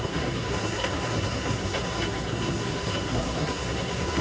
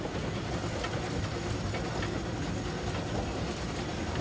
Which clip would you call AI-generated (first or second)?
first